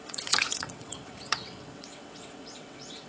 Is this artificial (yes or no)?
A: yes